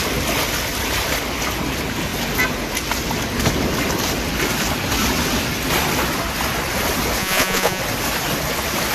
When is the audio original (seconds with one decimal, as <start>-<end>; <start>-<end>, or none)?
0.0-7.2; 7.8-8.9